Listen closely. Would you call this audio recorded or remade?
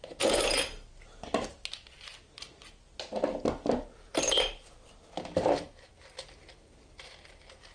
recorded